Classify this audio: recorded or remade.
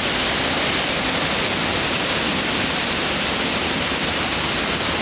recorded